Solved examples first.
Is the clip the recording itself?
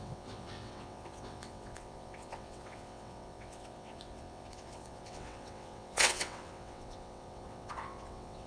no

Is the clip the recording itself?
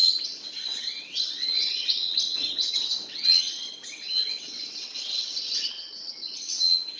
no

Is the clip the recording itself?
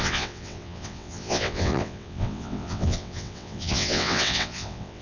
no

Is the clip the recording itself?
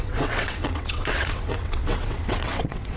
no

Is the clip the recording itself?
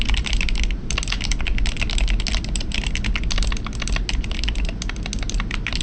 yes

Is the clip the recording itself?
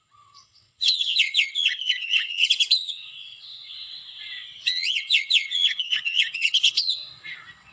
no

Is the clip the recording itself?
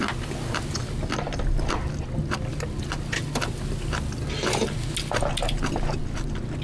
yes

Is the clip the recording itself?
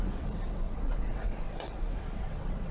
no